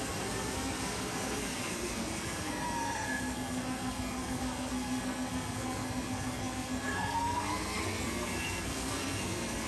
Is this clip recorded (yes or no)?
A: no